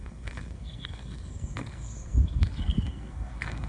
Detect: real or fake fake